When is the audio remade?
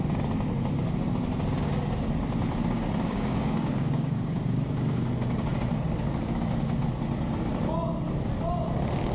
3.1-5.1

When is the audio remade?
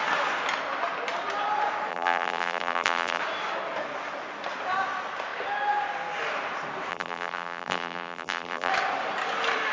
1.9-3.2; 6.9-8.7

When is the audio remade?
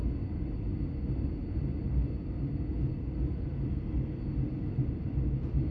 none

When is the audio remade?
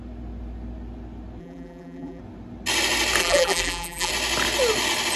1.4-2.2; 3.2-4.1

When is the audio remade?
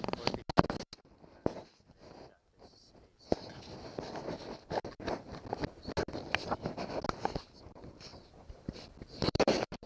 8.1-9.9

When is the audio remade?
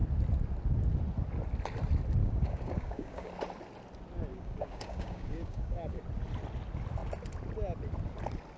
2.2-3.3; 4.3-6.0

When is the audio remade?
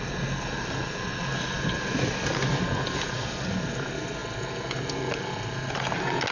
none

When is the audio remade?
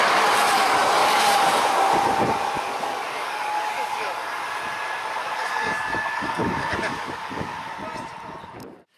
1.0-1.6; 2.7-4.4; 5.2-7.7